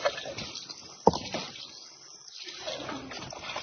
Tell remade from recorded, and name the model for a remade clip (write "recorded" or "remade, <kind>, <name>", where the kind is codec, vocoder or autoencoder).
recorded